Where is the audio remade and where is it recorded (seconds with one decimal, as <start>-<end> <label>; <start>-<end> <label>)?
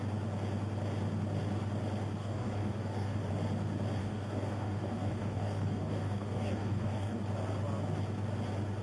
0.0-2.2 recorded; 2.2-3.3 remade; 3.3-4.0 recorded; 4.0-7.2 remade; 7.2-8.8 recorded